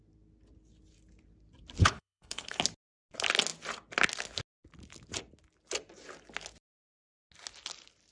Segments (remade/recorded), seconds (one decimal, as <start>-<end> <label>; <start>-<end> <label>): 0.0-1.8 recorded; 1.8-2.6 remade; 2.6-8.1 recorded